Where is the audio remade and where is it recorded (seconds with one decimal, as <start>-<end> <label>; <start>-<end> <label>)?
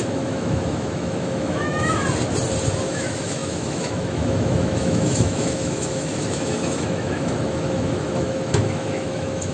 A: 0.0-2.0 remade; 2.0-2.9 recorded; 2.9-9.5 remade